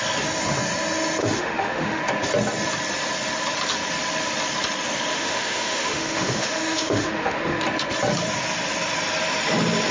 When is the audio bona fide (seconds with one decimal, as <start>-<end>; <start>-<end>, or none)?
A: 0.0-1.2; 2.0-5.1; 7.6-9.9